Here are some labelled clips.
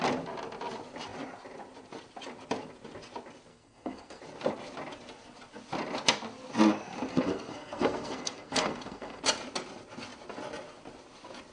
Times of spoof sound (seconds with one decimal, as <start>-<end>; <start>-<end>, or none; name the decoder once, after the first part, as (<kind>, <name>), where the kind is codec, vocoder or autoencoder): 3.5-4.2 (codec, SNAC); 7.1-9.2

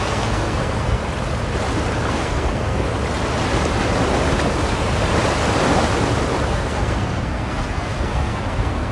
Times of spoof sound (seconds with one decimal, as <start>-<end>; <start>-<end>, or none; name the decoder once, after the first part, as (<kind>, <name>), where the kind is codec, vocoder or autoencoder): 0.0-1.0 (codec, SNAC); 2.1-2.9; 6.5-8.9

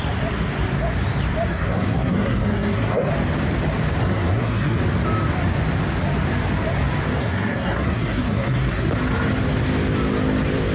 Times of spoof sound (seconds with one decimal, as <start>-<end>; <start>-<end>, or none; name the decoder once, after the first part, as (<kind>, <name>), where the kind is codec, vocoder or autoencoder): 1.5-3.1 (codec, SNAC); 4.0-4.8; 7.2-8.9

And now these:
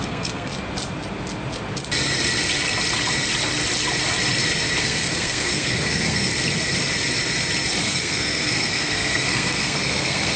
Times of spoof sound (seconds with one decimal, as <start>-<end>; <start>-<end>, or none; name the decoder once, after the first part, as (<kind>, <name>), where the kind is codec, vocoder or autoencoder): 0.0-0.5 (codec, SNAC); 4.8-6.3; 7.8-10.4